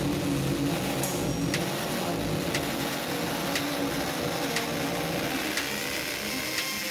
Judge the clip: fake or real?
real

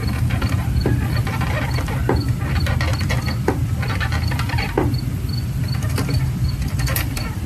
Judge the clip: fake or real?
fake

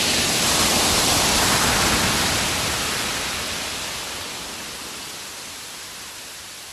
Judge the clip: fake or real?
real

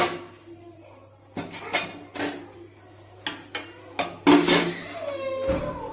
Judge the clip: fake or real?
real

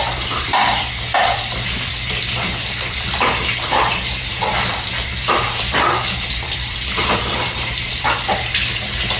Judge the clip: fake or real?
fake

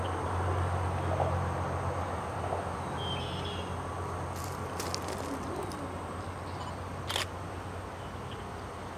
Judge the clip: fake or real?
real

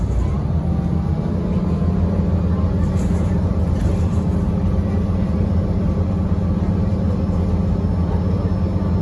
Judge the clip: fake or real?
real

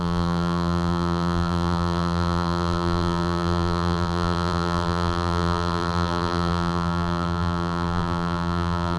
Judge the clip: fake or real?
fake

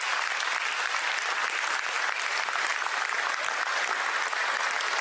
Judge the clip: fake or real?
real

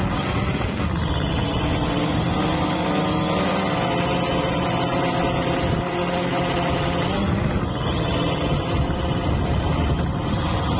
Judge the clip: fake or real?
real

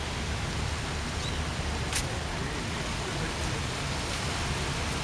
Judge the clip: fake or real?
real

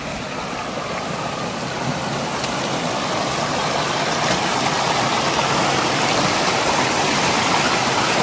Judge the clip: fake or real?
real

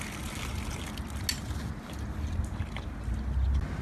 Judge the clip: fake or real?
real